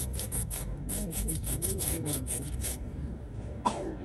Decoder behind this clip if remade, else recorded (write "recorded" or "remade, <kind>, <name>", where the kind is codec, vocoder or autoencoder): remade, codec, DAC